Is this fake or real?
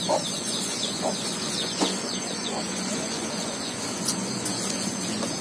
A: fake